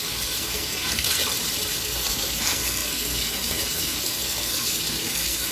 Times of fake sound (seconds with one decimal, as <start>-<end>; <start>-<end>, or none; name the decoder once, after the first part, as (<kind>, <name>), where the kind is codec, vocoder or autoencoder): 0.0-1.2 (codec, SNAC); 1.7-5.5